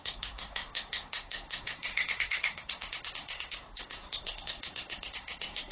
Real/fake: fake